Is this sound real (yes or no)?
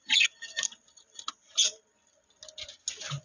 yes